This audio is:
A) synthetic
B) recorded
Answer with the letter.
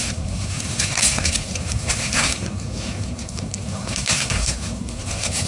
A